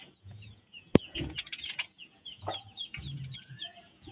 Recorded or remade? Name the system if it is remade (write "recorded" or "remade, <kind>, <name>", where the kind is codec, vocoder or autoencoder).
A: remade, vocoder, Vocos